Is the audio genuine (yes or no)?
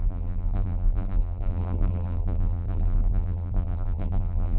no